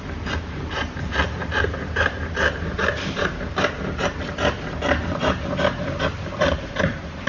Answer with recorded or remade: remade